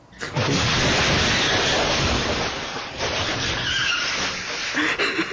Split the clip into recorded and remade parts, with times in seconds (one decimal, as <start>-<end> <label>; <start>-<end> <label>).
0.0-2.8 recorded; 2.8-4.0 remade; 4.0-5.3 recorded